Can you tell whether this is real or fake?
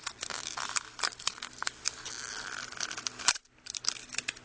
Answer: real